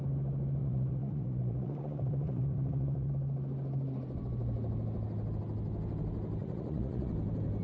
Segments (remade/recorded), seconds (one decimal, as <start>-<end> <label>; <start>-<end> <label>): 0.0-0.6 recorded; 0.6-3.1 remade; 3.1-6.4 recorded; 6.4-7.1 remade; 7.1-7.6 recorded